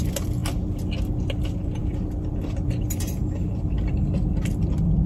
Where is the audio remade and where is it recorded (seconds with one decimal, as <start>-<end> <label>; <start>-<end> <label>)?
0.0-0.4 remade; 0.4-1.4 recorded; 1.4-5.1 remade